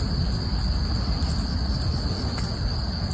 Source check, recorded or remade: recorded